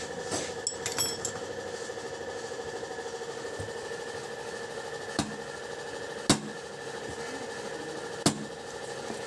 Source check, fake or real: real